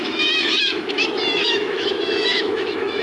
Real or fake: fake